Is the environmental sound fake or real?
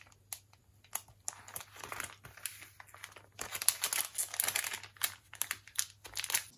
real